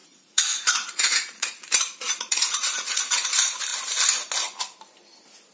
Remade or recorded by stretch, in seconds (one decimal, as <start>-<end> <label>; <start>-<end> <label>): 0.0-3.3 remade; 3.3-5.5 recorded